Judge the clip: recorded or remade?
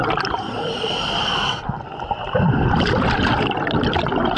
recorded